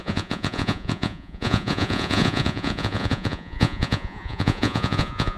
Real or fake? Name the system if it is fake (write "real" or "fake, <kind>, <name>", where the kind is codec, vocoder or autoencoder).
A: fake, vocoder, Vocos